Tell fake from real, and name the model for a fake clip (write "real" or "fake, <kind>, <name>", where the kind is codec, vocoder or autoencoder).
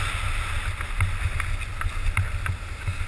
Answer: real